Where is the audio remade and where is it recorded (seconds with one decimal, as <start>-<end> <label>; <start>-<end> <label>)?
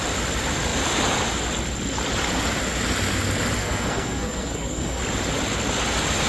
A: 0.0-3.6 recorded; 3.6-5.0 remade; 5.0-6.3 recorded